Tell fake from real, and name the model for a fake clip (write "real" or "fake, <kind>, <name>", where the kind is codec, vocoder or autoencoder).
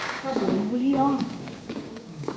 fake, codec, DAC